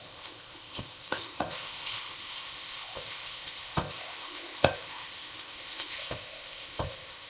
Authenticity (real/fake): fake